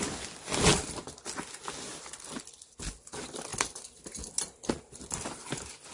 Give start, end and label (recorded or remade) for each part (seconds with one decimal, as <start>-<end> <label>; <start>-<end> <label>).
0.0-5.9 recorded